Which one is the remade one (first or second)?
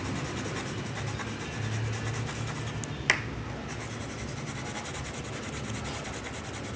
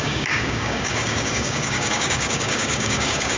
second